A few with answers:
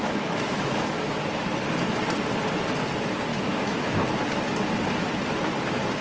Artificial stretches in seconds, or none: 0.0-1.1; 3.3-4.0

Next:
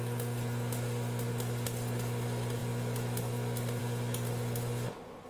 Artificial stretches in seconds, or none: none

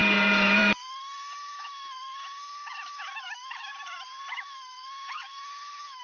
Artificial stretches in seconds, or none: 0.6-3.7; 4.3-6.0